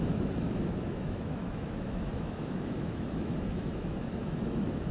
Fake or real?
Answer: fake